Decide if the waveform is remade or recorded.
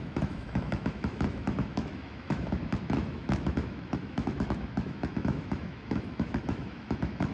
remade